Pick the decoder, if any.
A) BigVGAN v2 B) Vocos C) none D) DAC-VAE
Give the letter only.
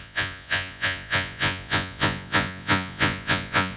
B